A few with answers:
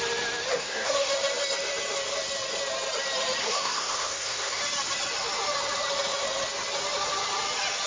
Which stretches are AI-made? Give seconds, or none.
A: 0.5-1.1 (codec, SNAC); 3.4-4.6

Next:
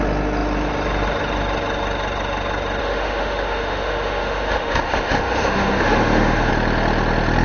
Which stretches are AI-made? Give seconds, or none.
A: 2.8-6.5 (autoencoder, DAC-VAE)

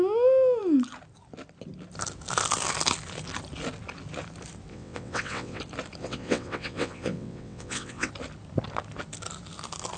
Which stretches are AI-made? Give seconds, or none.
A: 4.7-5.6 (vocoder, WaveNeXt); 6.0-8.1

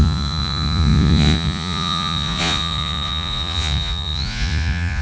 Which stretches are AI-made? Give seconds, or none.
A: 0.0-5.0 (vocoder, Vocos)

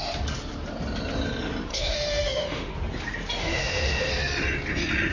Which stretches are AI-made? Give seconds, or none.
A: 1.7-2.7 (autoencoder, DAC-VAE); 3.4-4.1